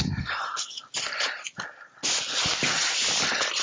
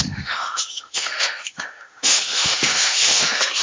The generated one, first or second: second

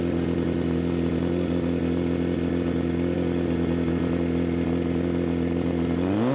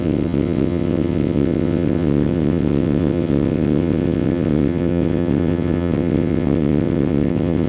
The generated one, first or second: second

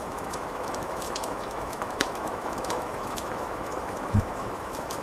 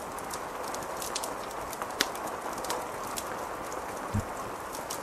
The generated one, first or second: first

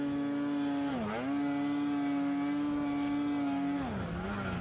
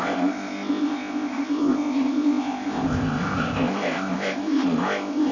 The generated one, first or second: second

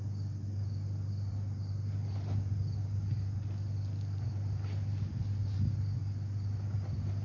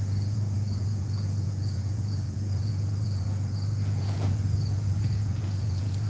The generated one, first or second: second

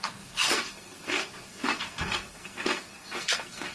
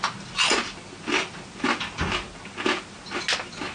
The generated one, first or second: first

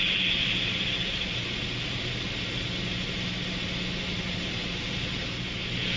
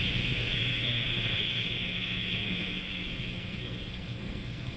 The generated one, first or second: second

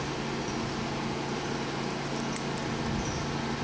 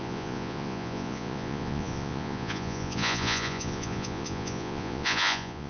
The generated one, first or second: second